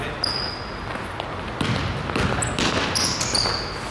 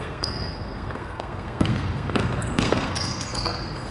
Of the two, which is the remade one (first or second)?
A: second